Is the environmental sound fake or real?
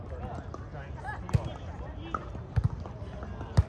real